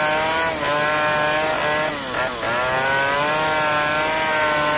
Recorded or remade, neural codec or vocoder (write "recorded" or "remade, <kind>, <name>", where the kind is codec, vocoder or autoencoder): recorded